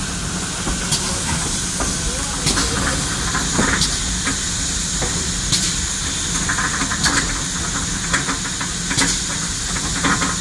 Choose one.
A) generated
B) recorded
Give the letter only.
B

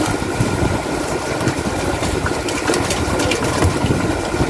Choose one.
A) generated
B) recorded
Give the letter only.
A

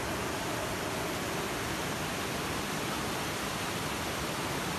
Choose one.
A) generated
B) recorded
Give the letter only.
B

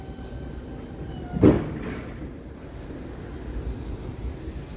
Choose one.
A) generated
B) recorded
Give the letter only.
B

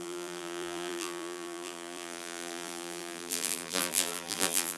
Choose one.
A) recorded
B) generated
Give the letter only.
B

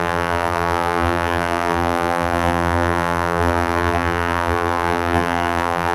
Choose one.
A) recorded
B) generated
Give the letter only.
B